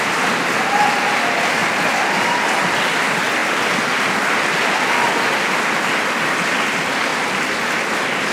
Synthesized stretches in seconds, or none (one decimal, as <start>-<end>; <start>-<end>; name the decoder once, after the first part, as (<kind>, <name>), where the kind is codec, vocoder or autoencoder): none